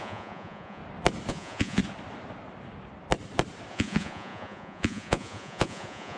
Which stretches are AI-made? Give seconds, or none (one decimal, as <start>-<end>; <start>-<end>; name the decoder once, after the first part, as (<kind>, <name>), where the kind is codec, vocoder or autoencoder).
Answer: 0.0-0.8 (vocoder, Vocos); 1.3-1.8; 3.7-6.2